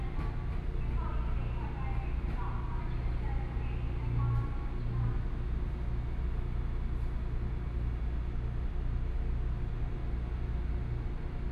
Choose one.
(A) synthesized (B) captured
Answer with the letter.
B